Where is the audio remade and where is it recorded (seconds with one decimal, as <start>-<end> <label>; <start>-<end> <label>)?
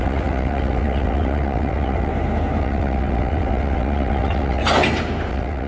0.0-2.1 remade; 2.1-2.6 recorded; 2.6-4.6 remade; 4.6-5.3 recorded; 5.3-5.7 remade